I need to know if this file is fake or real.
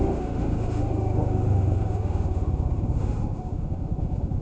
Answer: fake